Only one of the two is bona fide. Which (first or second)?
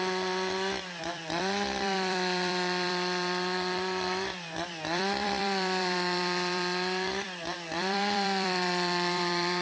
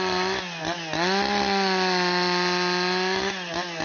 second